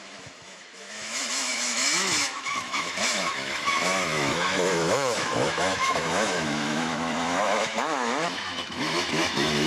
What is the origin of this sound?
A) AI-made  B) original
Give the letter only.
A